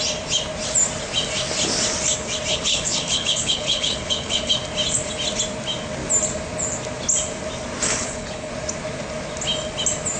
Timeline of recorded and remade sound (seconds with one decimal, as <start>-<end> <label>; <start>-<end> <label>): 0.0-2.5 recorded; 2.5-4.5 remade; 4.5-7.9 recorded; 7.9-8.5 remade; 8.5-10.2 recorded